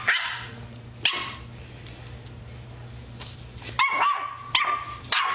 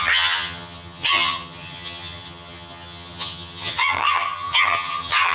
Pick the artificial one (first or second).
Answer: second